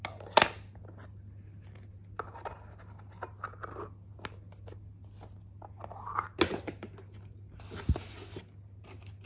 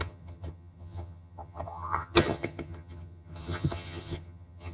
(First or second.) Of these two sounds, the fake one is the second